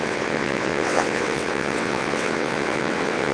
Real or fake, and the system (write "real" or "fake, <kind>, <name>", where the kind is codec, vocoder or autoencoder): fake, vocoder, WaveNeXt